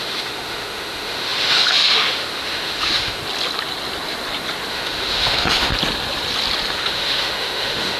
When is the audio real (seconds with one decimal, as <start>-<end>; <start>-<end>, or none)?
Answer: 3.2-4.7; 5.7-6.7